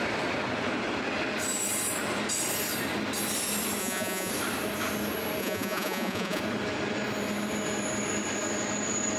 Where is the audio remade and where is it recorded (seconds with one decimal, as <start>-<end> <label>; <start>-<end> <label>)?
0.0-3.8 recorded; 3.8-4.3 remade; 4.3-5.4 recorded; 5.4-6.4 remade; 6.4-9.2 recorded